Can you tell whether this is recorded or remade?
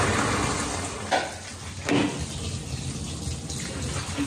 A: recorded